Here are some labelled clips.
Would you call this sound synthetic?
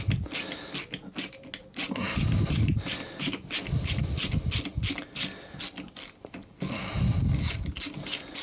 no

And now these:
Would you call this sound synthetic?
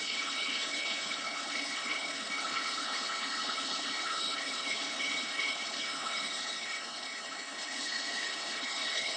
yes